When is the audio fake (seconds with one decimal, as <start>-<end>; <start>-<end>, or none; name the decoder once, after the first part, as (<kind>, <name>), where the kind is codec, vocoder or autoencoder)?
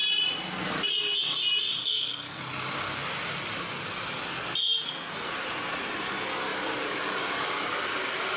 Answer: 1.8-2.4 (codec, SNAC); 4.6-5.3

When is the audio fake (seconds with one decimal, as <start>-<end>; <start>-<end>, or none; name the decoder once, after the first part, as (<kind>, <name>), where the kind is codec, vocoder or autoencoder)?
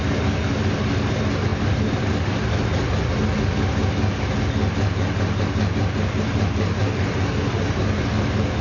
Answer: 1.5-2.4 (vocoder, BigVGAN v2)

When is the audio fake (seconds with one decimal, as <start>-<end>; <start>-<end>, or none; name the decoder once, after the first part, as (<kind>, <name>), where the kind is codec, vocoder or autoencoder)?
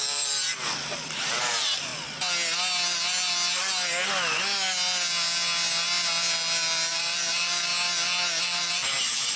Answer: 0.0-0.5 (vocoder, BigVGAN v2); 1.2-1.9; 6.9-7.7; 8.4-9.4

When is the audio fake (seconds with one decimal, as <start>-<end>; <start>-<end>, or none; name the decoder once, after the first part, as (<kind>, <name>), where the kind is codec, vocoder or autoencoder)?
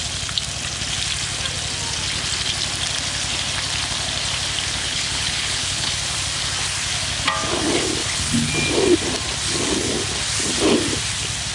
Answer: 4.8-5.9 (codec, HILCodec); 8.0-8.5